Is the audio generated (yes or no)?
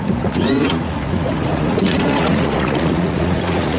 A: yes